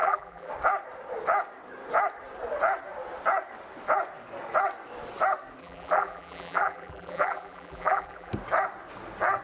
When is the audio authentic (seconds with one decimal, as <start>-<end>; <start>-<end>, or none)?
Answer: 0.5-5.6; 8.3-9.4